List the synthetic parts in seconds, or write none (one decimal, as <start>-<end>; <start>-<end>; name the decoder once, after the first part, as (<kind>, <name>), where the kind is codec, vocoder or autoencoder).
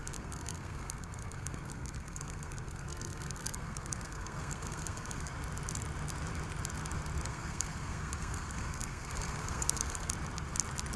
0.0-5.3 (codec, SNAC); 7.3-10.1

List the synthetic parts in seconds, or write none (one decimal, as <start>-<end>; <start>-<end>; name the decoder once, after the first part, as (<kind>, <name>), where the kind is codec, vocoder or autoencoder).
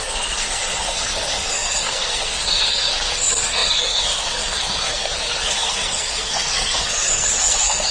0.0-7.9 (codec, SNAC)